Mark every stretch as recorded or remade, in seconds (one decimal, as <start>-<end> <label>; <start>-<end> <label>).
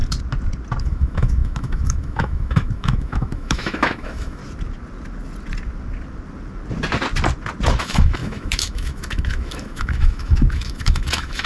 0.0-0.8 recorded; 0.8-4.4 remade; 4.4-7.8 recorded; 7.8-11.5 remade